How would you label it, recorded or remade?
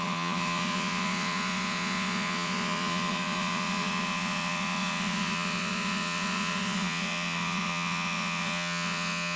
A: remade